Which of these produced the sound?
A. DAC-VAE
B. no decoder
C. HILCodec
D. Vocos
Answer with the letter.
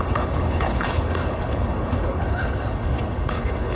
C